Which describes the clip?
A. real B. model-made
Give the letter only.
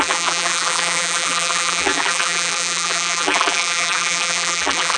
B